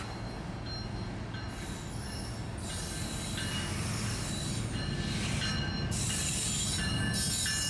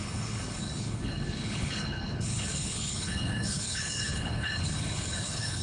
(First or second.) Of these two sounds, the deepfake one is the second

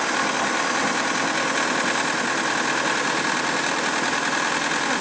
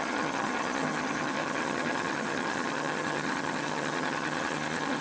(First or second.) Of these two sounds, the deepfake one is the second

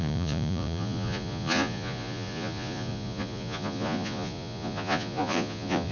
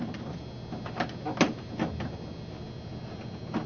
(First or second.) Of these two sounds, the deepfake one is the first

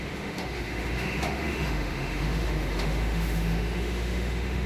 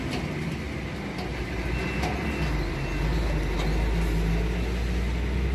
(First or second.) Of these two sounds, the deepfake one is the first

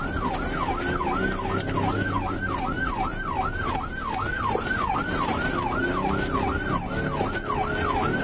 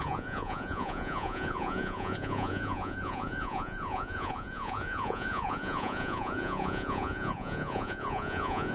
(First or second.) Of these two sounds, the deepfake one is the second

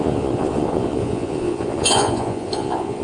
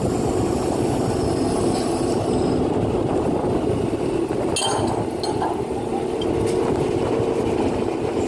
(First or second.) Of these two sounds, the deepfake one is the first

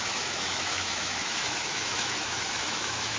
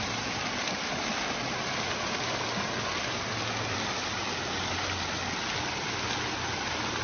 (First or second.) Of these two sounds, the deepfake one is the first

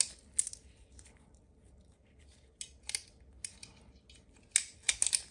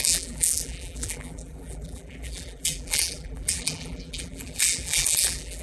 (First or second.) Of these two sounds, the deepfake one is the second